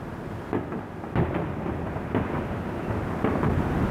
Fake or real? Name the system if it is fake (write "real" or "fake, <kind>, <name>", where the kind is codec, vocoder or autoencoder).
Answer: real